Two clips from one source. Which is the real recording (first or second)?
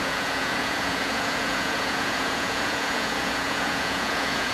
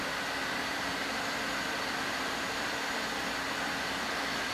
second